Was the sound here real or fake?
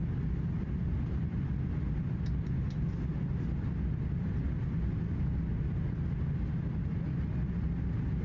real